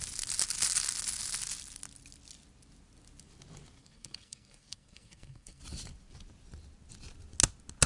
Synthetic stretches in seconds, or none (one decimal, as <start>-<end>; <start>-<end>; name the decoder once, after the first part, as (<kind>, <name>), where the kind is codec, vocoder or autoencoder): 3.8-5.6 (codec, SNAC)